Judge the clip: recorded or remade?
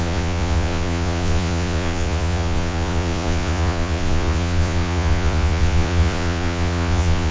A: remade